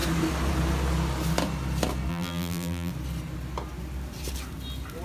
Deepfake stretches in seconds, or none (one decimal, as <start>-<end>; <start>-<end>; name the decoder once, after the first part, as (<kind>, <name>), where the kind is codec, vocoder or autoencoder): 2.1-2.9 (vocoder, BigVGAN v2)